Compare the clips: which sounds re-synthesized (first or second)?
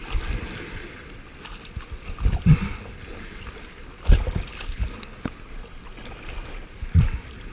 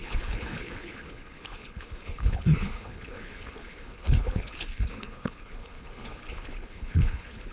second